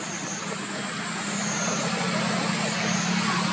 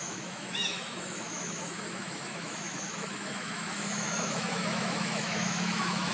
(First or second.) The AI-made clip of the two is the second